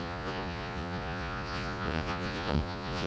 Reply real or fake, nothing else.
fake